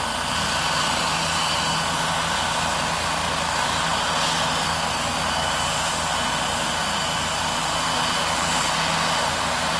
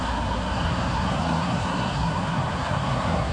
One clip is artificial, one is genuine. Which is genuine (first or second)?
first